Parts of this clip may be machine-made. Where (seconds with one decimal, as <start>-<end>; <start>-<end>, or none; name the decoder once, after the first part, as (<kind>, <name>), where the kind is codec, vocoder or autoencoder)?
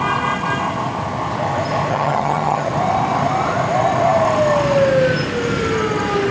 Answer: 1.9-2.7 (vocoder, HiFi-GAN)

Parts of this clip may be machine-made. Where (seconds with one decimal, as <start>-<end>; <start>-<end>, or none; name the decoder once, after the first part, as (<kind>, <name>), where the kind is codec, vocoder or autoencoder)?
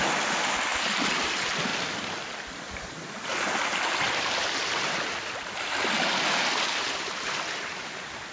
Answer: none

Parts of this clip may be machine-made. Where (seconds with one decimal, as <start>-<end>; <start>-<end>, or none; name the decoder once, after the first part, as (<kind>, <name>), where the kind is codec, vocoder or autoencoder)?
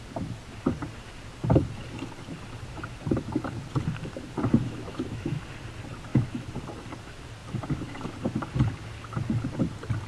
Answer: 4.6-5.4 (autoencoder, DAC-VAE); 6.1-6.6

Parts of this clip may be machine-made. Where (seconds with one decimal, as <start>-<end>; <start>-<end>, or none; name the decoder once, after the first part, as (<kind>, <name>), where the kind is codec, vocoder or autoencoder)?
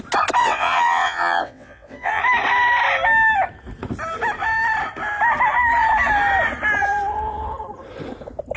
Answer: 0.4-2.2 (vocoder, WaveNeXt)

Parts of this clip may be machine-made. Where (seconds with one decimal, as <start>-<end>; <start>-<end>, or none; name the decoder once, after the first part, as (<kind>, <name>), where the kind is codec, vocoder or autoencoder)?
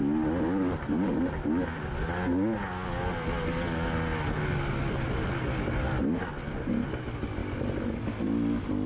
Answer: none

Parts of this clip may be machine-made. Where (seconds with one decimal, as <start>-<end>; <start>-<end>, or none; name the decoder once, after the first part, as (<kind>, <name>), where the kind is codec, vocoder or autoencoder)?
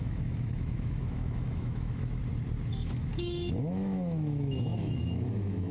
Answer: 0.0-2.2 (autoencoder, DAC-VAE); 2.7-5.7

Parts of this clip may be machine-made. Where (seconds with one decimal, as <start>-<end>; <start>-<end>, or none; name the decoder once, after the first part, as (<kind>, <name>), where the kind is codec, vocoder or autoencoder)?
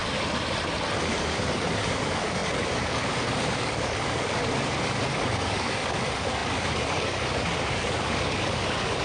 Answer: 1.0-9.0 (codec, DAC)